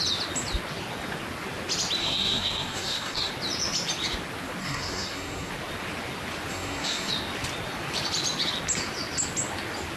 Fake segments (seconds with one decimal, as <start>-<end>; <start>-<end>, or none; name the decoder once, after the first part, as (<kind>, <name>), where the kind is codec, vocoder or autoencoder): 2.0-3.3 (codec, SNAC); 4.6-5.5; 6.5-7.1